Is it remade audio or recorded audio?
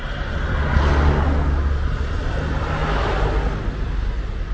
recorded